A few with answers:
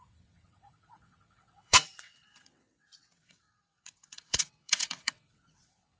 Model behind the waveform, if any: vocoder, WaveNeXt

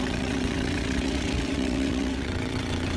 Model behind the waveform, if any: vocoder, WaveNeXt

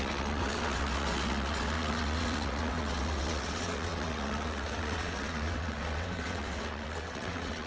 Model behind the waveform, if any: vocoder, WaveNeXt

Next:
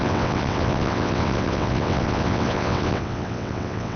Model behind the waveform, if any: vocoder, WaveNeXt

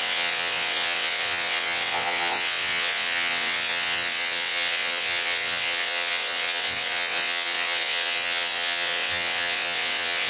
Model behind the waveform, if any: vocoder, WaveNeXt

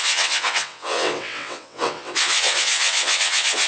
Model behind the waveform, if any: vocoder, WaveNeXt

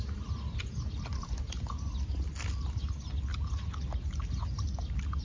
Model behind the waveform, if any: none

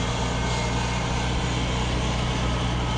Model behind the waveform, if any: none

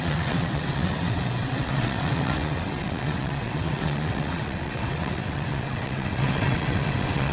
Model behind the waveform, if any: vocoder, WaveNeXt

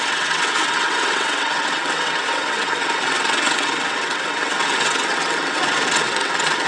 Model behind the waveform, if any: vocoder, WaveNeXt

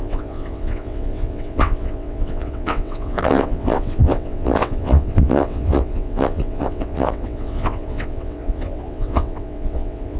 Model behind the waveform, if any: vocoder, WaveNeXt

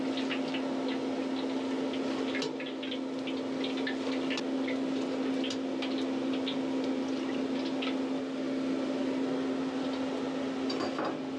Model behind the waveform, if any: none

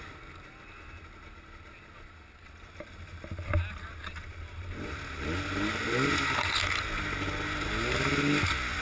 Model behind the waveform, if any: none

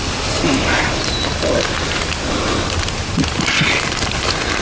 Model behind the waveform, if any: none